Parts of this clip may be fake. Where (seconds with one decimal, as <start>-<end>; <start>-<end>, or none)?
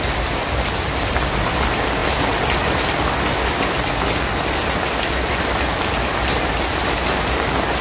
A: none